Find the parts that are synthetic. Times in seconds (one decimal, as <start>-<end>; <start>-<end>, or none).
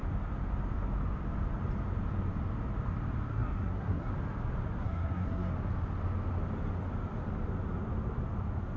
3.3-4.1; 4.8-5.5